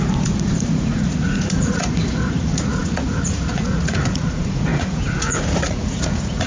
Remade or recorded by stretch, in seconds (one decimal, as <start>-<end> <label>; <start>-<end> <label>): 0.0-6.5 remade